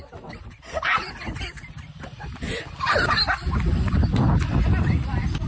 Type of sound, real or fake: real